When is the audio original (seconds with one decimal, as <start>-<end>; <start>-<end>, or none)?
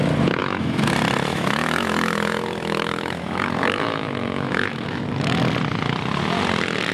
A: 0.0-0.4; 0.9-1.3; 5.0-6.9